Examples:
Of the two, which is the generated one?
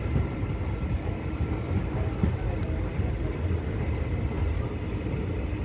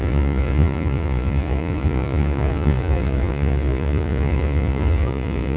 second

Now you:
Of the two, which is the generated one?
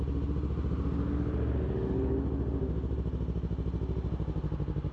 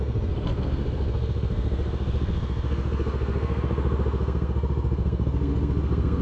second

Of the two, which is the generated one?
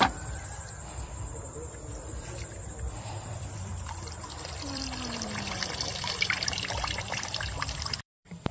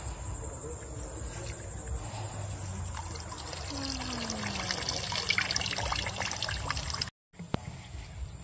first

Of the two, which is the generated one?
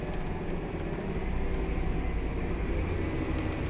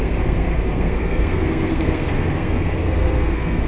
second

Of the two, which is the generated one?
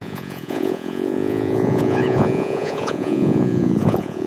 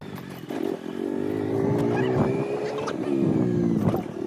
first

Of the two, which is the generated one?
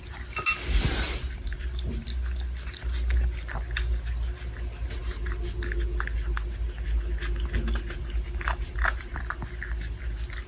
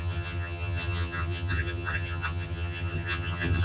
second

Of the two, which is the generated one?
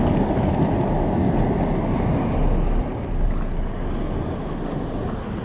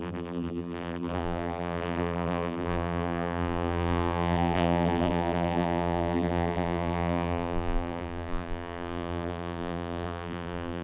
second